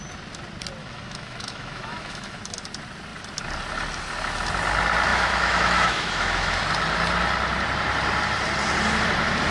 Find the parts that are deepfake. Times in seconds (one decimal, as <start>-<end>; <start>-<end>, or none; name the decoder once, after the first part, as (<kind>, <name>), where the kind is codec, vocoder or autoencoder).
0.8-2.4 (autoencoder, DAC-VAE); 5.1-6.6